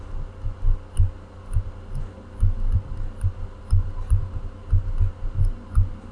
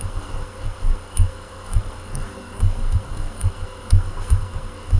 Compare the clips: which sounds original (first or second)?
first